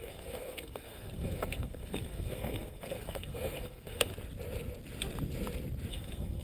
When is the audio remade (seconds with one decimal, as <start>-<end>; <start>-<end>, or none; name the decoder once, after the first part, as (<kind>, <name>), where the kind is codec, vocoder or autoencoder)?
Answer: 0.0-4.1 (codec, SNAC); 5.9-6.4